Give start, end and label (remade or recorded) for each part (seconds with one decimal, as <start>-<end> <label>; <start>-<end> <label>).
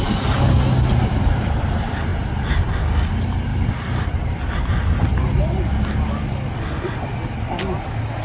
0.0-8.2 recorded